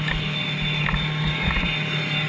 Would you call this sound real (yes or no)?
yes